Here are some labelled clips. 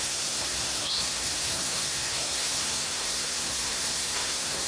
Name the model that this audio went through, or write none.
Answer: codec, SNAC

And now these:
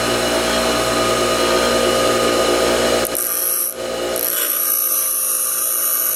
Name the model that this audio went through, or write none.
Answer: none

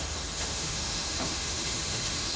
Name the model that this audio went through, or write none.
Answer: autoencoder, DAC-VAE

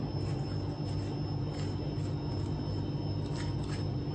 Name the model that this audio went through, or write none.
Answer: none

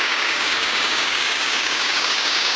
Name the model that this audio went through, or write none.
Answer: codec, DAC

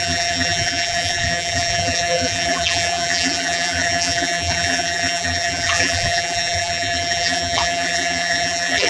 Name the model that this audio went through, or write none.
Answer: vocoder, BigVGAN v2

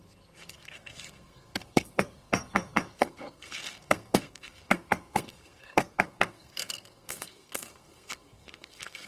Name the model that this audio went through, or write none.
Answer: codec, SNAC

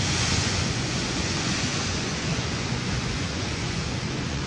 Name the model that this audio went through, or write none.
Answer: vocoder, Vocos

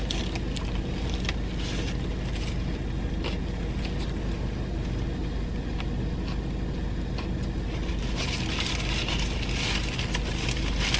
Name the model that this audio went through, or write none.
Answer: none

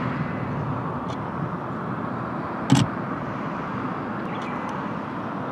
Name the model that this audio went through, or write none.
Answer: none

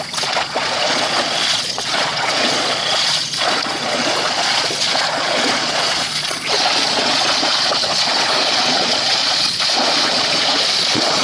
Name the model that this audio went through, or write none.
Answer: vocoder, Vocos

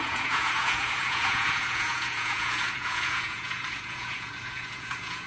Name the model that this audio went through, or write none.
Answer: vocoder, Vocos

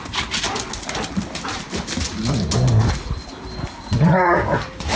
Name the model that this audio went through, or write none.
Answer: none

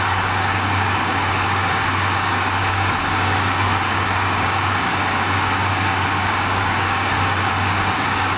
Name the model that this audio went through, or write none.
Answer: codec, DAC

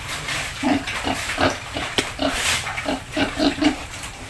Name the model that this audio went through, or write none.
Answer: vocoder, BigVGAN v2